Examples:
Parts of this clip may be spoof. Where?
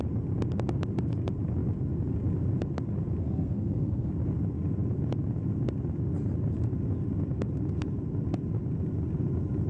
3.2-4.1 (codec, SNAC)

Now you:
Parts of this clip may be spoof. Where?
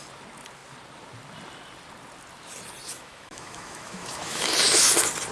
2.9-4.5 (autoencoder, DAC-VAE)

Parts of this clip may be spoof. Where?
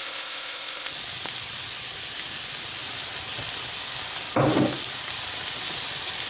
0.0-0.9 (codec, ZipCodec)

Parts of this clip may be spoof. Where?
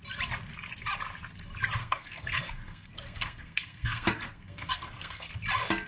1.8-5.3 (codec, SNAC)